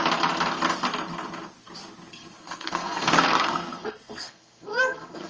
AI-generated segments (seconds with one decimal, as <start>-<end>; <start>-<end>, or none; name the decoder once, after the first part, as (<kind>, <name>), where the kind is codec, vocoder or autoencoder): 2.1-5.3 (codec, SNAC)